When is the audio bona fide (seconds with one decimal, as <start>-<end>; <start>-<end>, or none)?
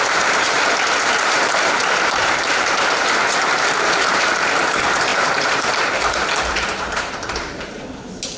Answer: none